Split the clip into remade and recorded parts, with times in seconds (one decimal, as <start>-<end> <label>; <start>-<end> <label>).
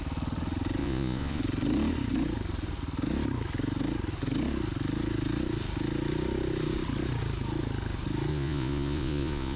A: 0.0-0.8 recorded; 0.8-1.4 remade; 1.4-8.3 recorded; 8.3-9.6 remade